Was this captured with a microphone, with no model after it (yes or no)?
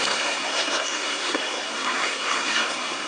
no